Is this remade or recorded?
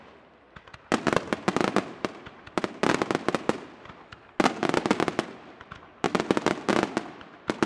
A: recorded